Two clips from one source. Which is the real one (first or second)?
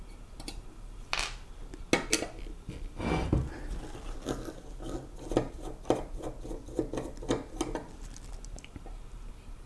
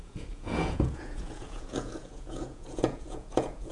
first